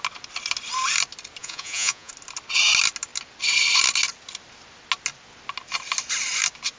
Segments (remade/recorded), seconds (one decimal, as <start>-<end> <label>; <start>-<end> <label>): 0.0-1.4 recorded; 1.4-2.1 remade; 2.1-6.8 recorded